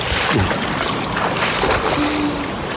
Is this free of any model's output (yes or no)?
yes